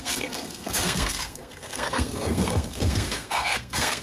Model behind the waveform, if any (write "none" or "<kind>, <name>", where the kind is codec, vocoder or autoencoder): codec, SNAC